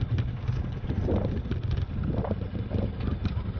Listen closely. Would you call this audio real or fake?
real